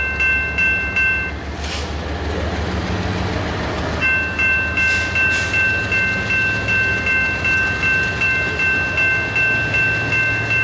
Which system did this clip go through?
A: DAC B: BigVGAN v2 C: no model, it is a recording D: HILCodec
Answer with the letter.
C